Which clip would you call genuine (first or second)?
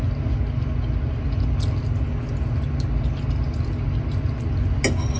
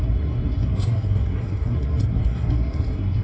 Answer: first